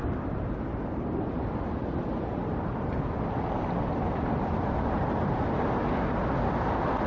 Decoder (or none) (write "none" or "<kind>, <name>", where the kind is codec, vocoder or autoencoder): none